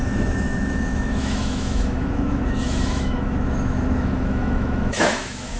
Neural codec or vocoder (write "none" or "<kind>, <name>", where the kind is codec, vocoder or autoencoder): autoencoder, DAC-VAE